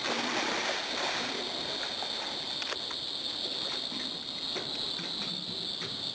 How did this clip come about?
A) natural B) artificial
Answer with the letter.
A